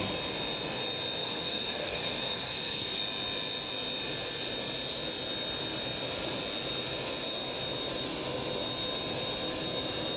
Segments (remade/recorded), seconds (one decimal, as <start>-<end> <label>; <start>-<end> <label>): 0.0-1.2 recorded; 1.2-3.0 remade; 3.0-10.2 recorded